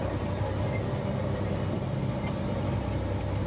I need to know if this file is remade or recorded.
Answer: recorded